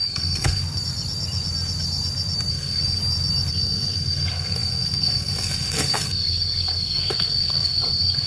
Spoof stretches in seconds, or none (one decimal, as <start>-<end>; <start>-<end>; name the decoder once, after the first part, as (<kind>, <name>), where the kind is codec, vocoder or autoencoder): 0.0-0.6 (codec, SNAC); 2.5-3.0; 3.5-8.3